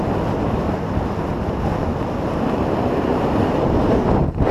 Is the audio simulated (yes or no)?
no